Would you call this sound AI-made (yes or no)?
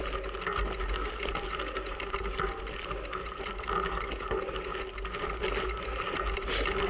no